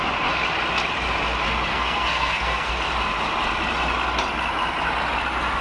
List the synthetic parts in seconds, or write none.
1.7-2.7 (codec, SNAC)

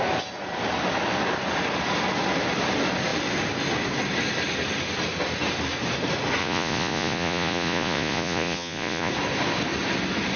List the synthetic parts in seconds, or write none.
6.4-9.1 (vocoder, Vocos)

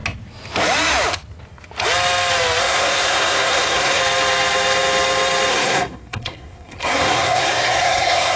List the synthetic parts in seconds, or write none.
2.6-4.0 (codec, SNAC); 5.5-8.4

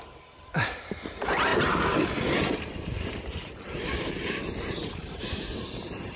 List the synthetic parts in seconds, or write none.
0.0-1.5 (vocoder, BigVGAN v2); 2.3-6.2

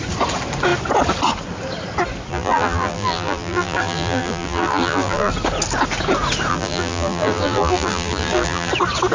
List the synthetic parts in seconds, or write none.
2.3-5.3 (vocoder, BigVGAN v2); 6.5-8.7

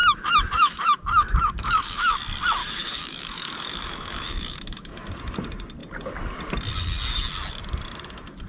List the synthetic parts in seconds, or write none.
0.0-2.2 (autoencoder, DAC-VAE); 2.6-5.1

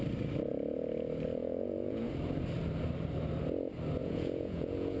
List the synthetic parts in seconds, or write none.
1.4-2.1 (vocoder, Vocos); 4.0-5.0

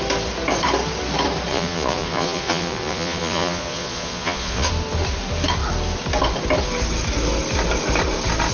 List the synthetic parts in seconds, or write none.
1.5-4.7 (vocoder, Vocos)